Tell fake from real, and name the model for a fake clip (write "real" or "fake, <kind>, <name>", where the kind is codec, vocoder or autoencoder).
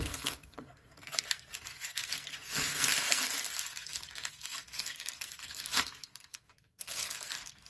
fake, codec, SNAC